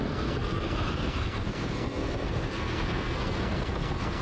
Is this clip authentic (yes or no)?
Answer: no